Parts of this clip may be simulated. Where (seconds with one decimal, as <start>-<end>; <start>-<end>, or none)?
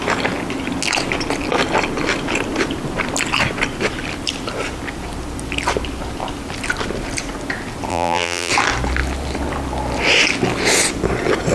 7.9-8.5